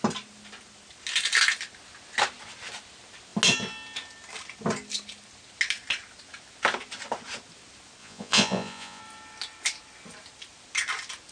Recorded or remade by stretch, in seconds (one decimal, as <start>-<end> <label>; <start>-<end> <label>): 0.0-8.0 recorded; 8.0-9.0 remade; 9.0-11.3 recorded